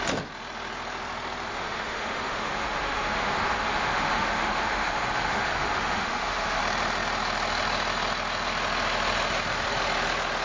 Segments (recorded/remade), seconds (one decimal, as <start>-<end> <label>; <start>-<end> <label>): 0.0-1.5 recorded; 1.5-6.6 remade; 6.6-10.4 recorded